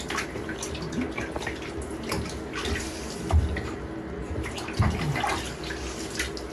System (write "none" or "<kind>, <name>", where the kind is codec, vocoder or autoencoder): none